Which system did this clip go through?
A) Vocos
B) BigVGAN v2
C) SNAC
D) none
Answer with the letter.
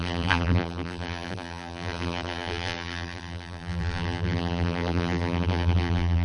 B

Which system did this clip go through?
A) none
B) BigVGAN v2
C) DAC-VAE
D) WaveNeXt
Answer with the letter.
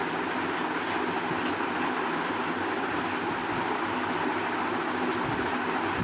A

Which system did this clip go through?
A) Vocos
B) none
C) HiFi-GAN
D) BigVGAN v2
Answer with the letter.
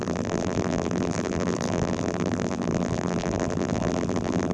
D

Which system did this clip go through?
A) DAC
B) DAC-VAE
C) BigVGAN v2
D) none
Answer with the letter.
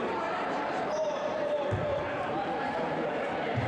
C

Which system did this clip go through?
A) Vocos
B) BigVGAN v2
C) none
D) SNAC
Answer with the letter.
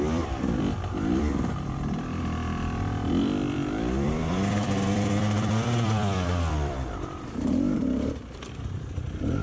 B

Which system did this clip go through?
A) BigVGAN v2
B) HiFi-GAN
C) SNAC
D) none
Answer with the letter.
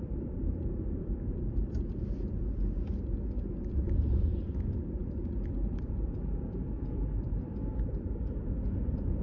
A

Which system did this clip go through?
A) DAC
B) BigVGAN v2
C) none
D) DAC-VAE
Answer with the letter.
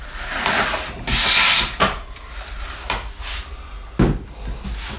C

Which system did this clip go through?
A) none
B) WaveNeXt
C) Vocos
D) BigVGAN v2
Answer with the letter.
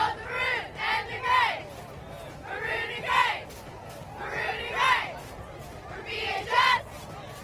A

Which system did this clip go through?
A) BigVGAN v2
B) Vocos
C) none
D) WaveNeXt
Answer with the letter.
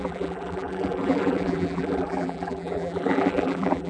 A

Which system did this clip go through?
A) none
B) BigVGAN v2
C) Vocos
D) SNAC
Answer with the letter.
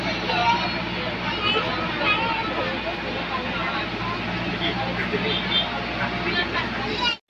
A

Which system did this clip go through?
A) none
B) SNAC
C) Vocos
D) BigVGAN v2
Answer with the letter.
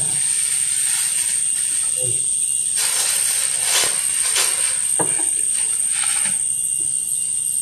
A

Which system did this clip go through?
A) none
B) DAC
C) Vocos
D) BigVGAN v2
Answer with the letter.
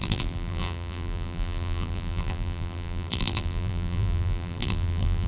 D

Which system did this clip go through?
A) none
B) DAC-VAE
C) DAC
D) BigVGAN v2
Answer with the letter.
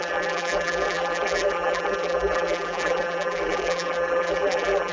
D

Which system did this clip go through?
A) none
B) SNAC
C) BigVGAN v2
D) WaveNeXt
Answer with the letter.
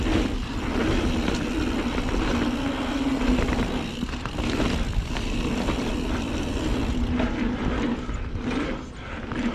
A